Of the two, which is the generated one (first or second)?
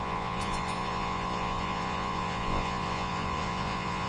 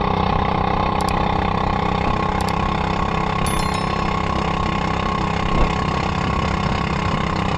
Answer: first